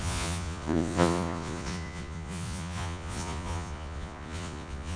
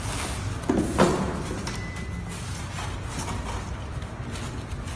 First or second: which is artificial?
first